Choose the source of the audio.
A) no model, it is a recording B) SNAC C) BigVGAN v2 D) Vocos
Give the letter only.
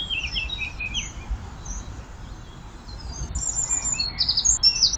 A